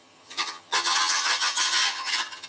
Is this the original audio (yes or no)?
no